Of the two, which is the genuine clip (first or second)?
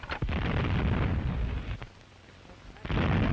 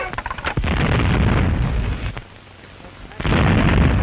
second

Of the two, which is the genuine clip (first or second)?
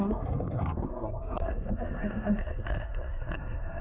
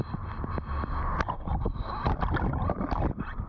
second